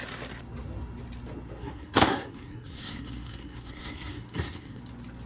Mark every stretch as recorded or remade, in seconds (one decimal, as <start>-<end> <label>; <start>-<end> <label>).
0.0-1.6 recorded; 1.6-4.8 remade; 4.8-5.3 recorded